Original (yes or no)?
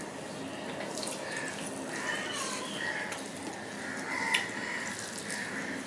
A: yes